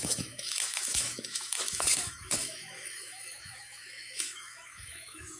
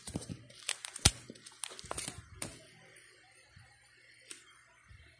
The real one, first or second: second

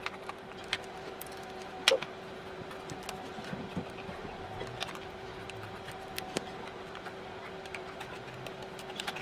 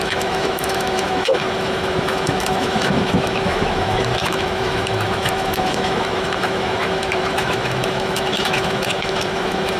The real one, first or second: first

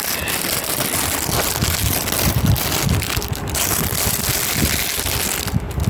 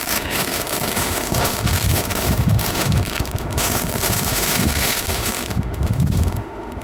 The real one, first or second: first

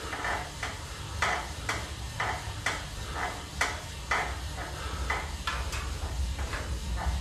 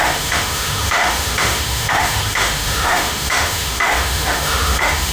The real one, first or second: first